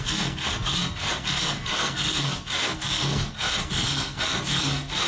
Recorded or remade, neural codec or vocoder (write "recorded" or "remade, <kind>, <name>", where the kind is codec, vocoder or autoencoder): remade, codec, SNAC